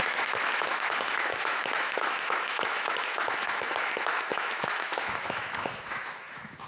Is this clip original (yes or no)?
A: no